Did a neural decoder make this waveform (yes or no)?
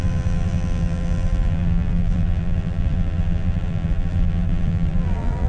yes